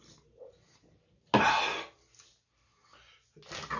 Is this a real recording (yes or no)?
yes